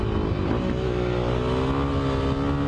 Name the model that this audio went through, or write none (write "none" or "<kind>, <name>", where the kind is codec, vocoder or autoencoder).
none